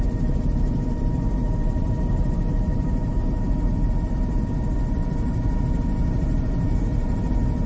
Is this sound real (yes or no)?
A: no